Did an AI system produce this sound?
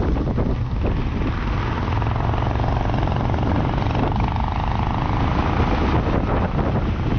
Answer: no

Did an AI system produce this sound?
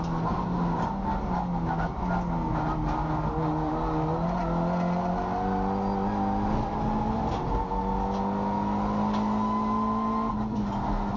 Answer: no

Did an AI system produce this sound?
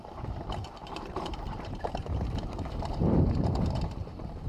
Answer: yes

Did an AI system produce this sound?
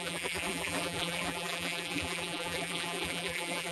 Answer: yes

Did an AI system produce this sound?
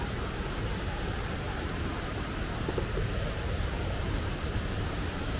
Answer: yes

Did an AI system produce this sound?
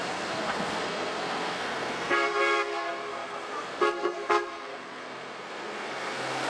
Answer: yes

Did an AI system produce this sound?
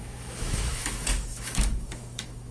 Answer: yes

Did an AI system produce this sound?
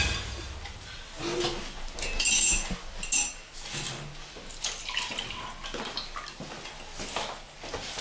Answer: no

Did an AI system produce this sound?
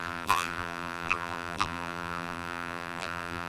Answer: yes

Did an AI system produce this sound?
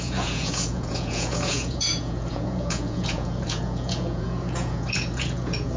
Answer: yes